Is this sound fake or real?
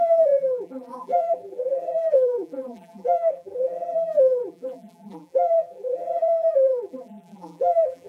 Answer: fake